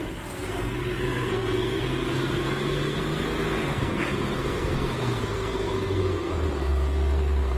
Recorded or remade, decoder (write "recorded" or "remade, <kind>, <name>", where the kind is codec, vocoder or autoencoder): remade, codec, SNAC